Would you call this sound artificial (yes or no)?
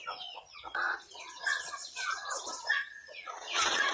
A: yes